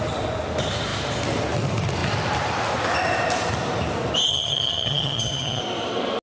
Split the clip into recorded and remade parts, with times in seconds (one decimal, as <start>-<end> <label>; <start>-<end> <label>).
0.0-4.3 recorded; 4.3-5.6 remade; 5.6-6.2 recorded